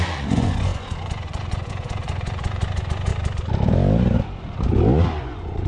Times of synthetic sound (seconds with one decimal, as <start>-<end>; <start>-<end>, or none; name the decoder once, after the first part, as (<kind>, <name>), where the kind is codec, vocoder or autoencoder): 0.0-3.1 (vocoder, Vocos); 5.2-5.7